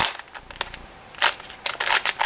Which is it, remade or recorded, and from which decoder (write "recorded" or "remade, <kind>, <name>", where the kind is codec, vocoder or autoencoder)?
recorded